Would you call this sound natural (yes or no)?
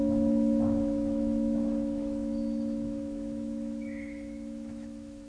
no